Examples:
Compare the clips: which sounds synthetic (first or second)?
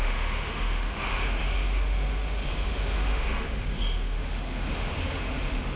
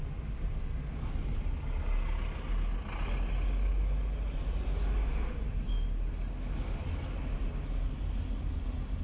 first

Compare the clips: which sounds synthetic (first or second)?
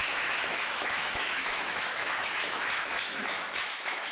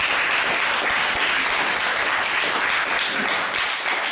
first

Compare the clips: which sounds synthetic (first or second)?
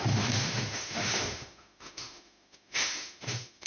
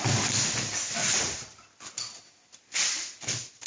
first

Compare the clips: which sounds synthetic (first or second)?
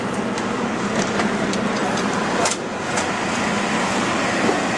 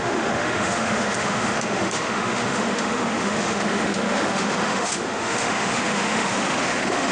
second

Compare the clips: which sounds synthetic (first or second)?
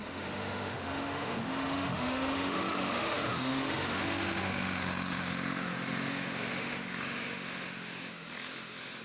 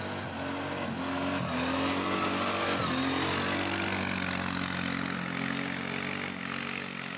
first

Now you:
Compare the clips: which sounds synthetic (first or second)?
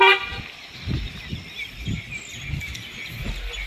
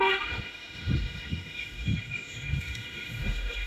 second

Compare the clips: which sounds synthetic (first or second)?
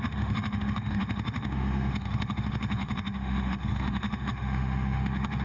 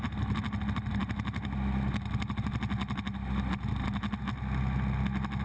first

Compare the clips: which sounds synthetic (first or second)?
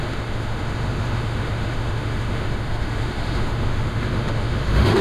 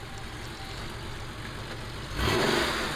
first